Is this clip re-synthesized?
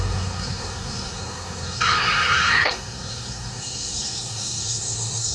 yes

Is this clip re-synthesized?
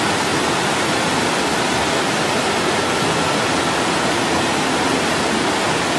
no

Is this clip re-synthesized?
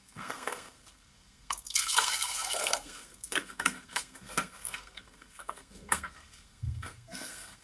yes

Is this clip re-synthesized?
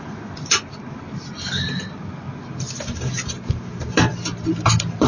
no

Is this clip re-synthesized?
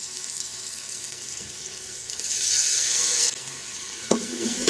yes